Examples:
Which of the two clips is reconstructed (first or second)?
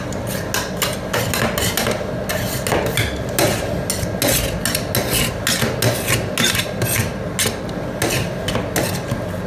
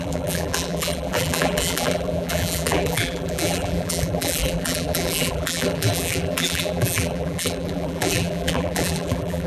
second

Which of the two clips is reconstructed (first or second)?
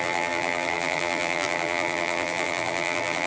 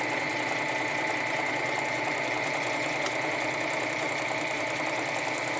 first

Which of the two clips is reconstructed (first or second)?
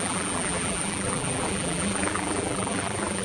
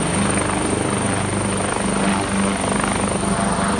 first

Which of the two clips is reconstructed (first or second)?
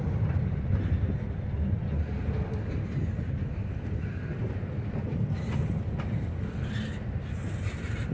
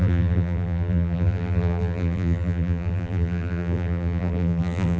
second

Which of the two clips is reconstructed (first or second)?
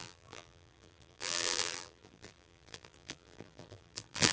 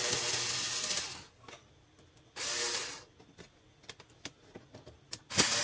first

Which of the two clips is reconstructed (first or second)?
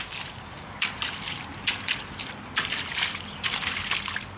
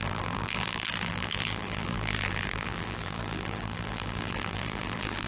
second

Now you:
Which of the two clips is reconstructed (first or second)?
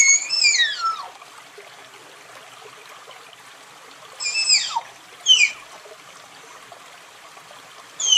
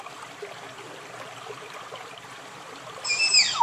second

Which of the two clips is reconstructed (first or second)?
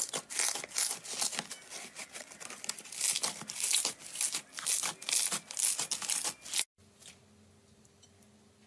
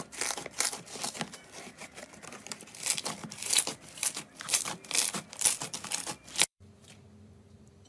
second